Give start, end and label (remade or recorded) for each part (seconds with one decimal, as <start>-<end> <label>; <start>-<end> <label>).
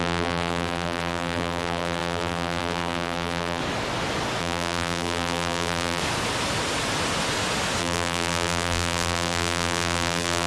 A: 0.0-3.6 remade; 3.6-4.4 recorded; 4.4-6.0 remade; 6.0-7.8 recorded; 7.8-10.5 remade